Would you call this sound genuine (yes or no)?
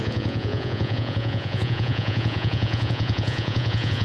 no